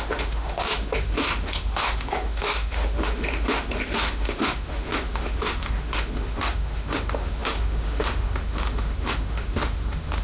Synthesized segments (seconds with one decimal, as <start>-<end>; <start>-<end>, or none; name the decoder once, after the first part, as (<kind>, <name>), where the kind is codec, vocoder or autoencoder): 0.0-10.2 (autoencoder, DAC-VAE)